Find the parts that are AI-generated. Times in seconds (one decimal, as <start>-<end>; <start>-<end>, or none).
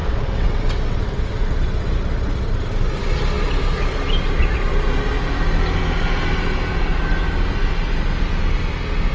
0.0-1.4